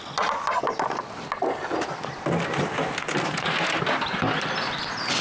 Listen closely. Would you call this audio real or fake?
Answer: real